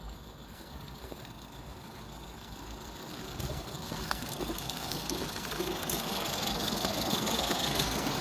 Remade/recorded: remade